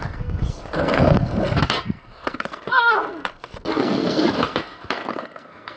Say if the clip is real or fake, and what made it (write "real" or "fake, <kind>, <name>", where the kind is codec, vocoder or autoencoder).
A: fake, codec, SNAC